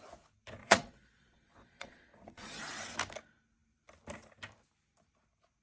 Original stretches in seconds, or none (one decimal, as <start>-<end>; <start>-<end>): 0.0-0.6; 2.6-5.6